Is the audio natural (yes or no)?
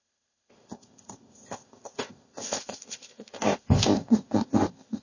no